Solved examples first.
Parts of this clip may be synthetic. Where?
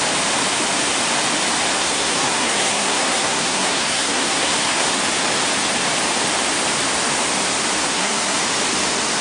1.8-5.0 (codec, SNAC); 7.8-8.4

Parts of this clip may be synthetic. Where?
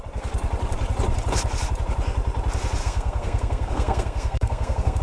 2.8-5.0 (codec, SNAC)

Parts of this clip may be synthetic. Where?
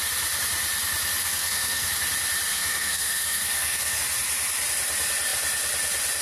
1.2-1.9 (codec, SNAC); 2.5-4.0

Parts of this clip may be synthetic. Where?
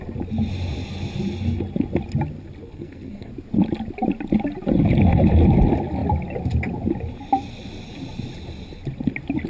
2.6-3.3 (codec, SNAC)